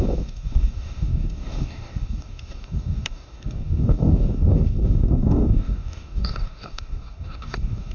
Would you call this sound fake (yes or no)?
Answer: yes